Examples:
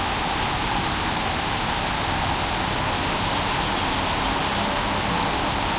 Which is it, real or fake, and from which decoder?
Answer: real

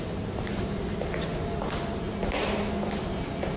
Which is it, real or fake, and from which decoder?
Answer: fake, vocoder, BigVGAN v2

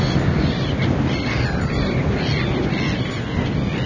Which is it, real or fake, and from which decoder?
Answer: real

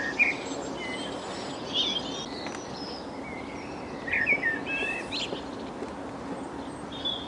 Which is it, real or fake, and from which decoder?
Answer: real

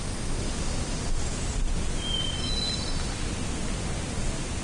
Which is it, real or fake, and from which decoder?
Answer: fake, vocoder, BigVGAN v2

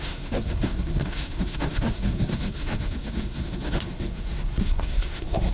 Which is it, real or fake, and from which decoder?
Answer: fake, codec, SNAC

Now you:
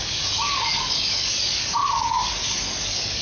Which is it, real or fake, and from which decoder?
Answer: fake, codec, DAC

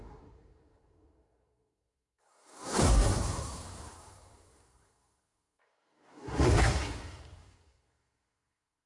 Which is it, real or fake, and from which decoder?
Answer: fake, codec, SNAC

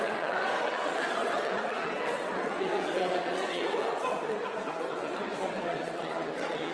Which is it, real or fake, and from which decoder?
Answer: fake, vocoder, WaveNeXt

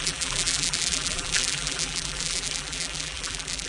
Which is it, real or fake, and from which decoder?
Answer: fake, vocoder, BigVGAN v2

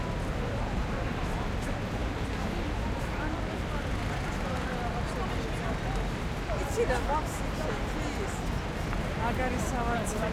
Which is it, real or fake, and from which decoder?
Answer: real